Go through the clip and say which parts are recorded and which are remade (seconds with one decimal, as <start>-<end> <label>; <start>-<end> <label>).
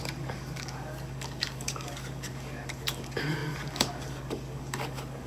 0.0-5.3 remade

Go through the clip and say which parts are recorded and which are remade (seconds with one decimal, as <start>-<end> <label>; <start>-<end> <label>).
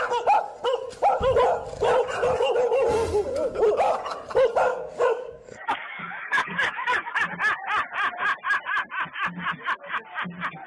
0.0-4.7 recorded; 4.7-7.2 remade; 7.2-10.7 recorded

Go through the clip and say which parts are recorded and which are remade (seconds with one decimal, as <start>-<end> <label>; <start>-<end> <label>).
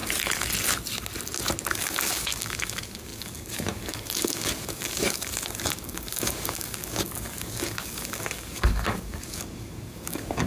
0.0-1.7 recorded; 1.7-10.5 remade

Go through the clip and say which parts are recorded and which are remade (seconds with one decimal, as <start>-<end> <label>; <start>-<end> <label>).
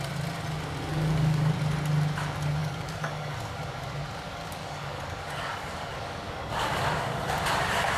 0.0-0.9 recorded; 0.9-1.5 remade; 1.5-2.6 recorded; 2.6-7.3 remade; 7.3-8.0 recorded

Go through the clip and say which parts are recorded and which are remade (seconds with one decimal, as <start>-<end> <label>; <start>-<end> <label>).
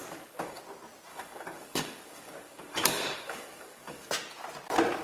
0.0-0.6 remade; 0.6-1.1 recorded; 1.1-4.1 remade; 4.1-5.0 recorded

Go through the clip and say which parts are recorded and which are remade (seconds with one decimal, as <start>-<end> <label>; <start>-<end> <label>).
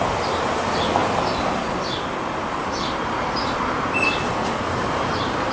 0.0-5.5 recorded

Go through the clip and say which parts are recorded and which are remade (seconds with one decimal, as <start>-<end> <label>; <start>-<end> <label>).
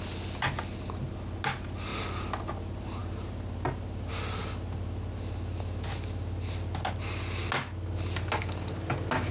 0.0-9.3 recorded